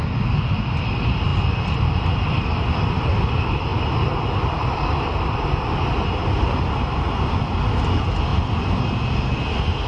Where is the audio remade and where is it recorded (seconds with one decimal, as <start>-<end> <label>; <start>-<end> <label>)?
0.0-9.9 recorded